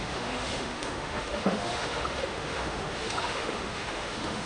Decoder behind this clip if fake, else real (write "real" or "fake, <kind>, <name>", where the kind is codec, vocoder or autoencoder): fake, autoencoder, DAC-VAE